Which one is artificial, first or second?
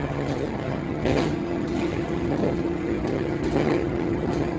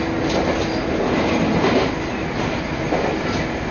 first